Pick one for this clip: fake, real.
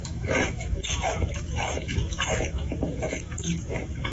fake